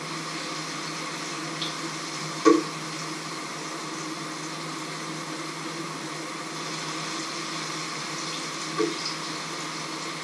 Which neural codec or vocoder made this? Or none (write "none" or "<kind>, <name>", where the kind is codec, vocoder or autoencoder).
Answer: none